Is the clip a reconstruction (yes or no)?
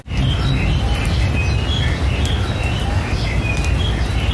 no